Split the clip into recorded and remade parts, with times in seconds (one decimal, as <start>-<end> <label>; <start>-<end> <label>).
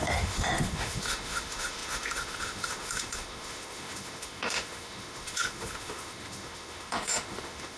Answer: 0.0-7.8 remade